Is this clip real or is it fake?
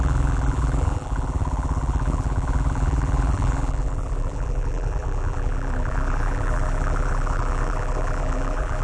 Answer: fake